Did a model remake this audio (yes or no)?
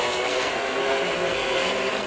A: yes